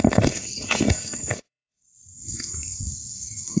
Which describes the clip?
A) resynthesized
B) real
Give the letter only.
A